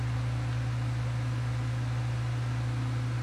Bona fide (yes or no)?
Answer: yes